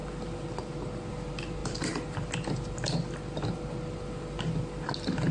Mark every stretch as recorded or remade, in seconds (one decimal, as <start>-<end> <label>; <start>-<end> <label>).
0.0-5.3 recorded